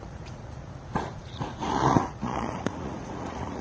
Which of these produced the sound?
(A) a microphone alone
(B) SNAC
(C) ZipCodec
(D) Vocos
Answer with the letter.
D